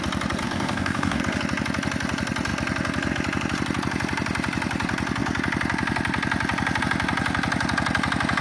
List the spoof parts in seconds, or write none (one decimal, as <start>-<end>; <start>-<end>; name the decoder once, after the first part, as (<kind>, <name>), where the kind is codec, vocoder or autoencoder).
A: 0.4-1.2 (codec, DAC)